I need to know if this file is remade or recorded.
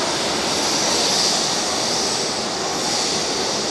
recorded